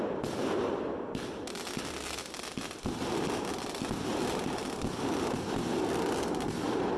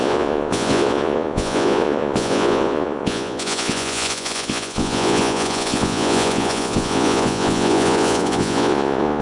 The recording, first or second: first